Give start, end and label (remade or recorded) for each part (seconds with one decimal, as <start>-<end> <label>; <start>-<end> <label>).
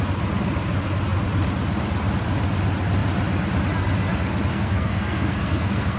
0.0-4.5 recorded; 4.5-6.0 remade